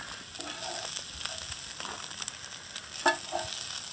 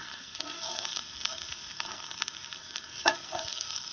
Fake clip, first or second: second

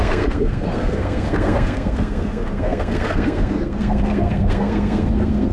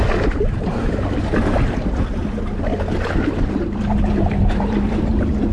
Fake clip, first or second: first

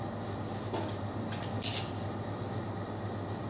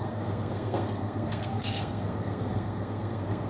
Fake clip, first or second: second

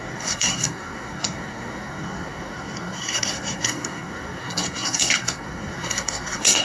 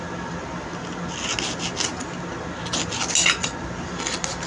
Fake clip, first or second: first